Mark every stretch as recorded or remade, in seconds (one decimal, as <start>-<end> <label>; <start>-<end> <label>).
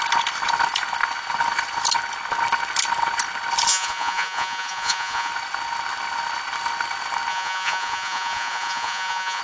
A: 0.0-3.7 recorded; 3.7-5.3 remade; 5.3-7.3 recorded; 7.3-9.4 remade